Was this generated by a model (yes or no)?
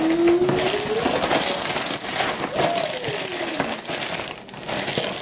no